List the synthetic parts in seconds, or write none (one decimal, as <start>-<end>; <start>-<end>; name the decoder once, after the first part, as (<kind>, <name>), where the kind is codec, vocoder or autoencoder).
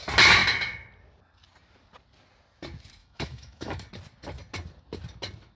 3.0-3.8 (autoencoder, DAC-VAE)